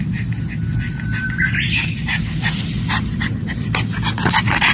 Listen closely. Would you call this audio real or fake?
real